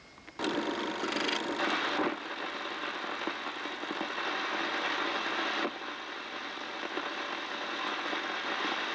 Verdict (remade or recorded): recorded